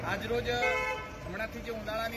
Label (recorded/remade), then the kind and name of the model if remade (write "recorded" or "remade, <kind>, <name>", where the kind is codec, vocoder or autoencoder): recorded